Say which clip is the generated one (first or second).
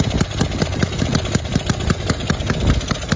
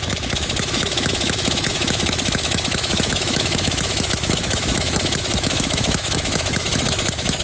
second